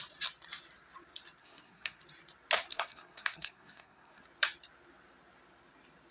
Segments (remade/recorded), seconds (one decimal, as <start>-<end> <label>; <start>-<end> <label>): 0.0-1.4 recorded; 1.4-2.0 remade; 2.0-2.7 recorded; 2.7-4.2 remade; 4.2-6.1 recorded